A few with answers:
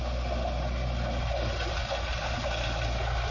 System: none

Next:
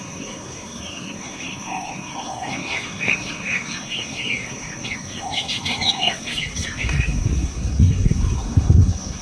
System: codec, SNAC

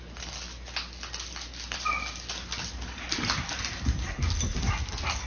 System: none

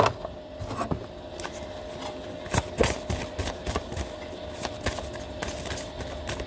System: none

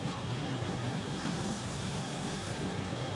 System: codec, SNAC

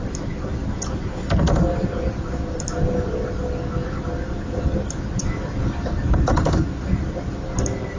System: none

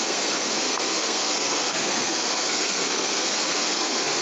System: codec, SNAC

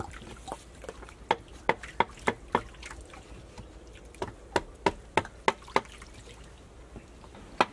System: none